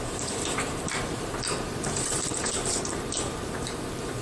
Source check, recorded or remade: remade